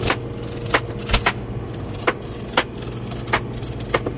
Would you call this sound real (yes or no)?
yes